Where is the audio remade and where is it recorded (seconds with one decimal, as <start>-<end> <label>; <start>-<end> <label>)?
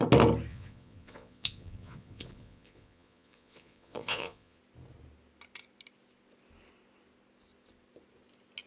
0.0-0.5 recorded; 0.5-4.6 remade; 4.6-8.7 recorded